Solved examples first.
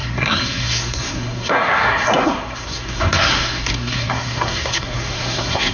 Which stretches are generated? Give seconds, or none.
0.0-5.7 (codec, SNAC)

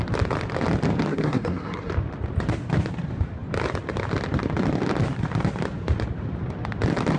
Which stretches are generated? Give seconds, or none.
1.1-1.9 (codec, SNAC)

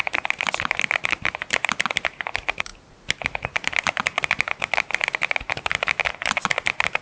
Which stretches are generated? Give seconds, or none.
none

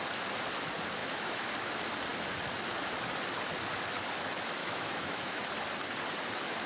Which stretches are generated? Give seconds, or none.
1.0-1.5 (autoencoder, DAC-VAE); 4.6-5.4

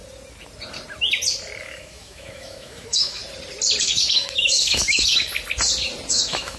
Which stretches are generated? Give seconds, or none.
1.6-3.2 (autoencoder, DAC-VAE); 3.8-5.3; 6.1-6.6